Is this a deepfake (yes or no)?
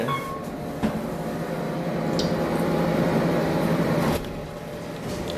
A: no